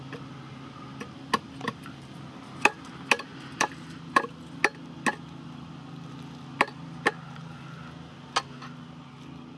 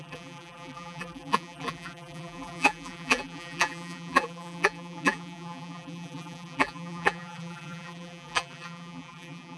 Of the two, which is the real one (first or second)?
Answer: first